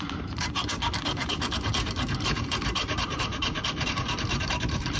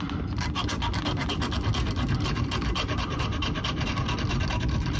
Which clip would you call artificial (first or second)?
first